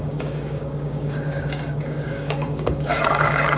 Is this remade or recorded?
remade